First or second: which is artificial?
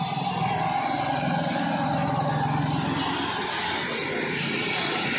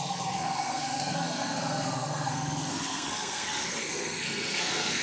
second